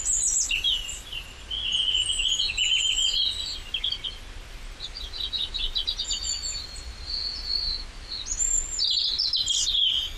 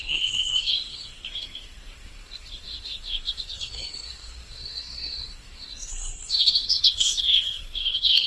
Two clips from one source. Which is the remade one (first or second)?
second